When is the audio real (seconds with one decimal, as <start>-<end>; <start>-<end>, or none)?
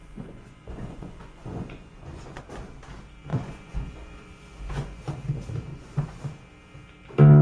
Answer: 2.4-3.3; 5.0-5.7; 6.2-7.4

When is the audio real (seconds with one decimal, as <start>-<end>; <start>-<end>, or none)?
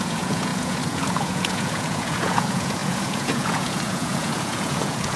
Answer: none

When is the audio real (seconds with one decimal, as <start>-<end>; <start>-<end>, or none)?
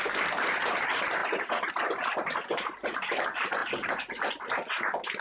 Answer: 0.0-5.2